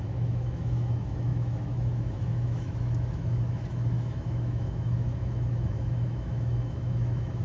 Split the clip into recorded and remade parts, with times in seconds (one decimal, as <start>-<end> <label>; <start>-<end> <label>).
0.0-7.4 remade